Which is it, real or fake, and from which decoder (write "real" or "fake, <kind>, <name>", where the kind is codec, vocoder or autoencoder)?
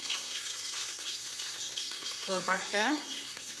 fake, codec, SNAC